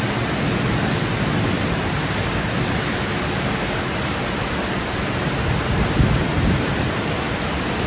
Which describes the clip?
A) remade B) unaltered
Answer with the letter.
B